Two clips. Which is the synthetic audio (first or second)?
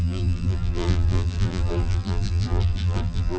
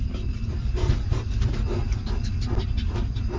first